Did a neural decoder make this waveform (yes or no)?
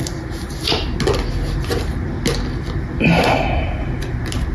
no